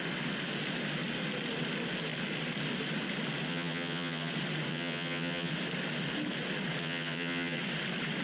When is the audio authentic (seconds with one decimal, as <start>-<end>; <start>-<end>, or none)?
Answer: 0.0-3.5; 4.3-4.7; 5.5-6.8; 7.6-8.2